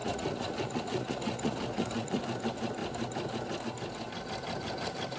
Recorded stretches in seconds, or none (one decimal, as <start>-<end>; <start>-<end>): 2.2-5.2